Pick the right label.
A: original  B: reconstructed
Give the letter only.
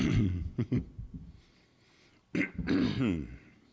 A